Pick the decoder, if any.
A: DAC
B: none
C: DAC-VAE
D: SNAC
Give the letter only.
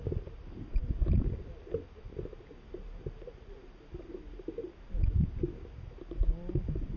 B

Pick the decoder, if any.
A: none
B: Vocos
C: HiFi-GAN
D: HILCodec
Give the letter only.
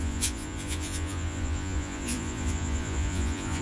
B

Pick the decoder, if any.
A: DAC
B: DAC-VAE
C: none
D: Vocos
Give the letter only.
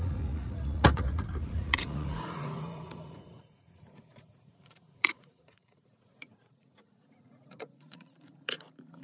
D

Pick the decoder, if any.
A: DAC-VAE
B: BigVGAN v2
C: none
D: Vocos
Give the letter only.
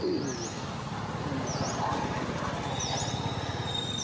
C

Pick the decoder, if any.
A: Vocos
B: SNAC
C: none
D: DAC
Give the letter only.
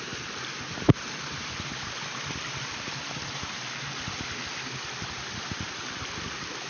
C